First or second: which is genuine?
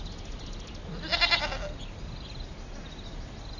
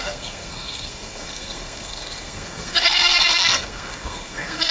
first